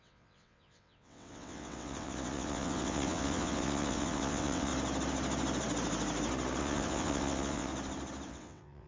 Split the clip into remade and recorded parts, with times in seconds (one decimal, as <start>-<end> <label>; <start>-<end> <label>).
0.0-4.7 remade; 4.7-6.6 recorded; 6.6-7.7 remade; 7.7-8.3 recorded; 8.3-8.9 remade